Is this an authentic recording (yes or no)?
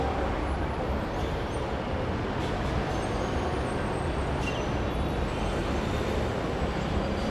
yes